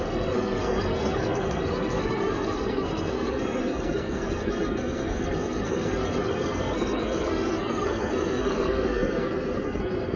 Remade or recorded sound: remade